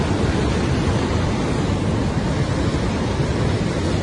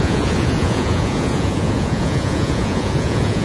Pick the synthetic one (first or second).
second